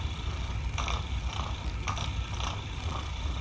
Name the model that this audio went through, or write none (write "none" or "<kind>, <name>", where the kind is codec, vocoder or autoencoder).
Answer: none